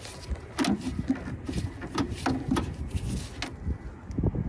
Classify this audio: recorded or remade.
recorded